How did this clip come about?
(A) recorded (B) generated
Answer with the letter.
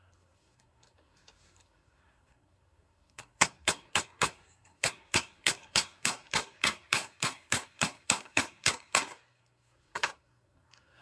B